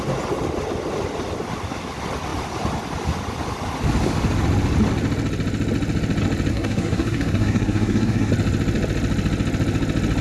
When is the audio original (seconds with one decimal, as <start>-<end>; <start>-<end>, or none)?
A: 0.0-6.5; 8.3-10.2